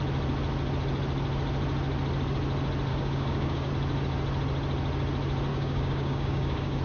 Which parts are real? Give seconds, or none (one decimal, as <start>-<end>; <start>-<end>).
0.0-2.9; 3.7-5.5